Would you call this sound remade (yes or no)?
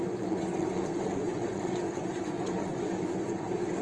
yes